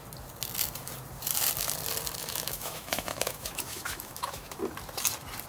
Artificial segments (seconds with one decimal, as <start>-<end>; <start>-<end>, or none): 2.2-4.6